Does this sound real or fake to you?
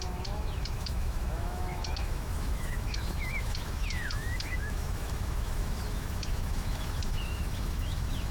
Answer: fake